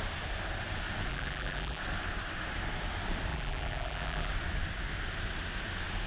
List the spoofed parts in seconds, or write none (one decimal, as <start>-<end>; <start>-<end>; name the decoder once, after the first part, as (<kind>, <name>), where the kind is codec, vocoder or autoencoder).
1.1-1.8 (vocoder, BigVGAN v2); 3.3-4.3